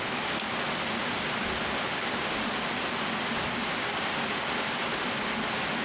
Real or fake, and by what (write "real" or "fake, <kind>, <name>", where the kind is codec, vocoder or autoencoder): real